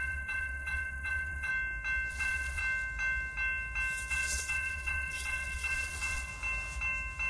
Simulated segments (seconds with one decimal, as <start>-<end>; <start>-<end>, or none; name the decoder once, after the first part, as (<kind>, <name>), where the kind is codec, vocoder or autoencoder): 0.0-1.5 (vocoder, WaveNeXt); 2.1-2.6; 4.1-6.3